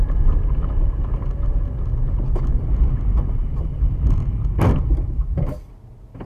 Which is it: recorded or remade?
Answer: recorded